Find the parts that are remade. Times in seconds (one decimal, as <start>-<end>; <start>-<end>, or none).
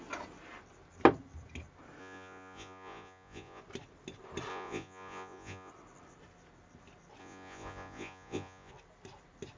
2.0-3.6; 4.5-5.7; 7.2-8.7